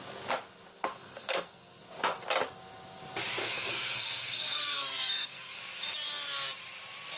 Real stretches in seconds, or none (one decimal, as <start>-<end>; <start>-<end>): 0.0-0.7; 1.8-3.4; 5.6-7.2